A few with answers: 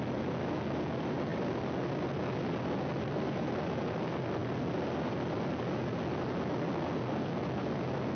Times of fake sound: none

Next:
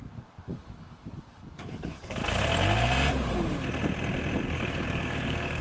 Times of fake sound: 0.0-2.2 (codec, DAC); 4.4-5.6

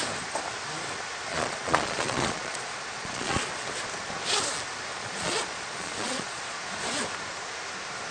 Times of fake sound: 1.3-3.5 (vocoder, Vocos); 4.9-6.6

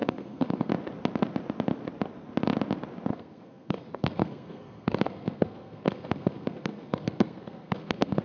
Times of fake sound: 0.0-0.7 (codec, SNAC); 3.1-8.2